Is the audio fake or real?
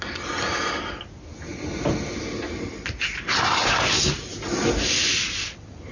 real